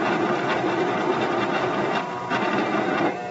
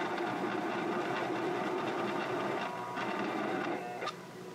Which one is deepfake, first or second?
first